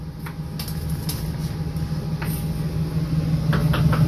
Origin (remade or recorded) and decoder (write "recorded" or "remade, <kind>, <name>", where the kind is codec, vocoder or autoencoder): recorded